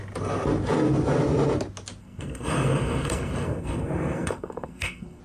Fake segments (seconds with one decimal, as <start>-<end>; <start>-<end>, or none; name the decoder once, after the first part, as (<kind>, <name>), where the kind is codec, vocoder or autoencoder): 2.0-5.2 (codec, SNAC)